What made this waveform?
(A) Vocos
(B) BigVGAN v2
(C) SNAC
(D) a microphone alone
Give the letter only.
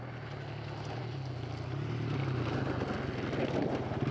D